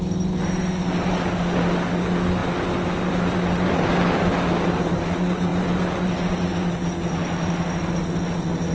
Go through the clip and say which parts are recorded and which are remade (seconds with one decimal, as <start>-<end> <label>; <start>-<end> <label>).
0.0-8.7 recorded